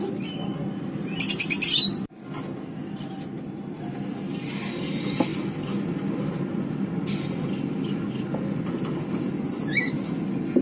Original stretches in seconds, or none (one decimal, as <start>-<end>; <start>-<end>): 0.0-10.6